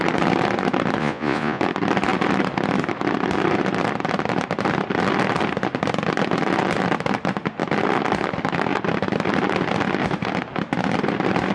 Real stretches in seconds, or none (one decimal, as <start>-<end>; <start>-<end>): 0.0-1.0; 1.6-11.5